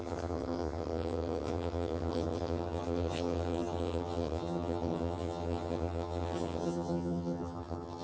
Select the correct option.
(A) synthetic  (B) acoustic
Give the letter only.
A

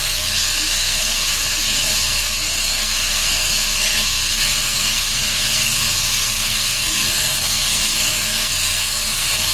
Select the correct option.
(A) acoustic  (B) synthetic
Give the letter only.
B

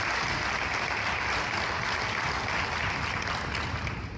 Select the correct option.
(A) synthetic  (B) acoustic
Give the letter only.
B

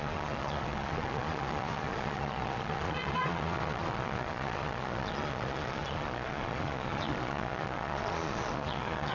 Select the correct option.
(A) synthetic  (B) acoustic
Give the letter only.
A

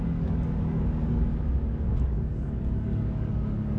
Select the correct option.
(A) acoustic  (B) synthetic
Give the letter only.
B